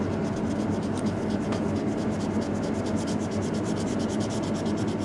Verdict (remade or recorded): recorded